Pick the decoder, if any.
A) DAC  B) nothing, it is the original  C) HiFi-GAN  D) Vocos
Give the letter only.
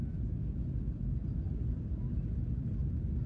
B